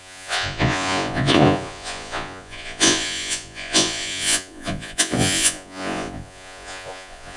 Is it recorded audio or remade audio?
remade